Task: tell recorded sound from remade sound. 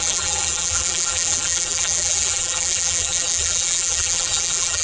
remade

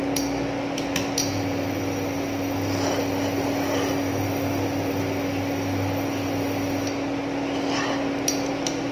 recorded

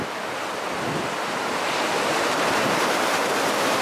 recorded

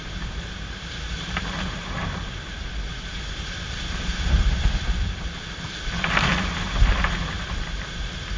remade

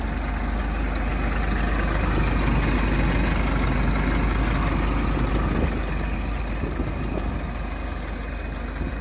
recorded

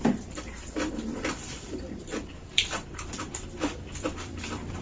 remade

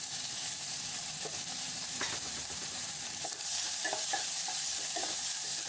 remade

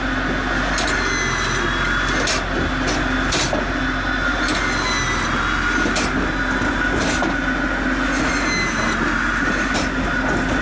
recorded